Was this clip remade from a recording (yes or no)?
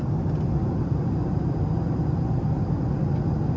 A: no